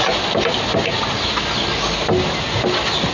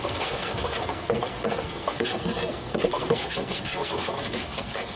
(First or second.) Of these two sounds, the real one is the first